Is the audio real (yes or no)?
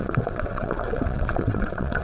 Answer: no